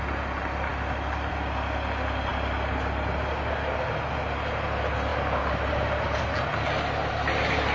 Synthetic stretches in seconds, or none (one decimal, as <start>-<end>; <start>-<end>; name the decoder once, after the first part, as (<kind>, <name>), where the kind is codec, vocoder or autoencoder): none

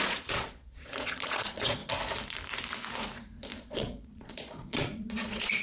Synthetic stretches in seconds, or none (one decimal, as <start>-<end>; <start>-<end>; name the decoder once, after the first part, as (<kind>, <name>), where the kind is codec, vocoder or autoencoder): 0.0-1.8 (vocoder, Vocos); 3.6-5.6

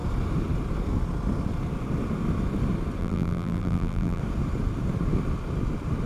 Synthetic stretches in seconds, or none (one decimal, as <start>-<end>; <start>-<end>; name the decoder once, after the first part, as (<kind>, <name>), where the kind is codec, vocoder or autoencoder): 3.0-4.2 (vocoder, BigVGAN v2)

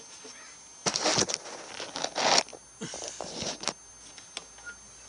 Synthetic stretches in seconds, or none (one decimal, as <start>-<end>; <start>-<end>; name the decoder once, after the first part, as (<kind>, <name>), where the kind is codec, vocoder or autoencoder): none